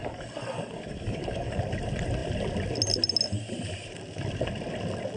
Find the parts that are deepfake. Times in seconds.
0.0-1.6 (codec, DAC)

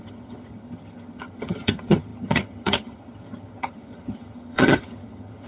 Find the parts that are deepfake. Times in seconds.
0.0-5.5 (vocoder, HiFi-GAN)

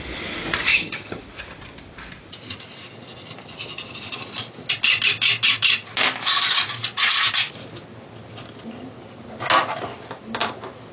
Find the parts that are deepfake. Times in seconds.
0.7-1.2 (vocoder, HiFi-GAN)

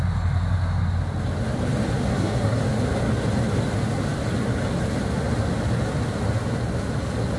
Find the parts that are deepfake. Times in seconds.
2.1-2.6 (codec, SNAC)

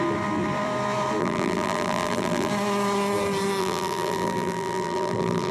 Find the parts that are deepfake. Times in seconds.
1.2-2.5 (vocoder, BigVGAN v2); 3.6-5.5